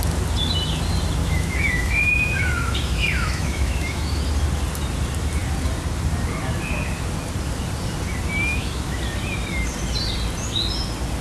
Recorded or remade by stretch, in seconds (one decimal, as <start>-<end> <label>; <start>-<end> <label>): 0.0-1.2 recorded; 1.2-4.2 remade; 4.2-8.5 recorded; 8.5-9.0 remade; 9.0-11.2 recorded